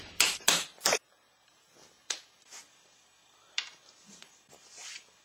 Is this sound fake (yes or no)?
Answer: yes